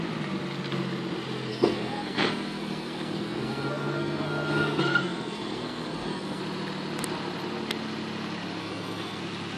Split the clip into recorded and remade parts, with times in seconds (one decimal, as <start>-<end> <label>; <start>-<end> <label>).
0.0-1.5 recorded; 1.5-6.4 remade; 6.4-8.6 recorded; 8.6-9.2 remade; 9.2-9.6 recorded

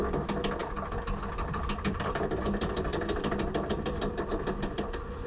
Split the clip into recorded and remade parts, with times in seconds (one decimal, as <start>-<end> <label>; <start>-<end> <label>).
0.0-0.6 recorded; 0.6-2.4 remade; 2.4-2.9 recorded; 2.9-4.2 remade; 4.2-5.3 recorded

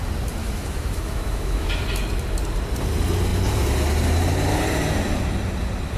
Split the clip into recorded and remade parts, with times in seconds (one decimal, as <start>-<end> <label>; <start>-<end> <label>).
0.0-0.4 recorded; 0.4-1.7 remade; 1.7-6.0 recorded

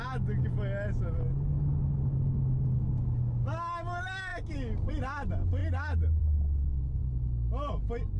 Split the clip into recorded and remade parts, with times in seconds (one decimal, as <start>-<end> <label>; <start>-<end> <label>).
0.0-8.2 recorded

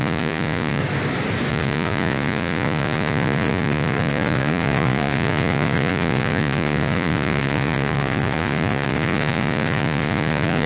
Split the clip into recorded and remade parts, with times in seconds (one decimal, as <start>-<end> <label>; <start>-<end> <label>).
0.0-0.8 remade; 0.8-1.5 recorded; 1.5-10.7 remade

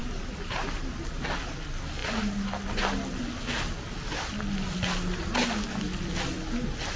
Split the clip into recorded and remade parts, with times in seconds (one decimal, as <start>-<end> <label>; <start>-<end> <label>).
0.0-7.0 recorded